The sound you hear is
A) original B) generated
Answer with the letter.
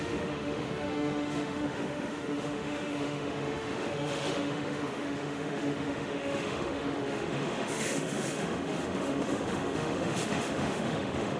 B